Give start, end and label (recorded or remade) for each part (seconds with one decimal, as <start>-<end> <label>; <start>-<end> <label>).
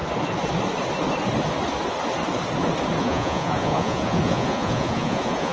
0.0-3.0 recorded; 3.0-5.5 remade